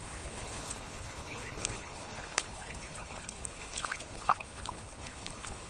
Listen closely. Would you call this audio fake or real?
fake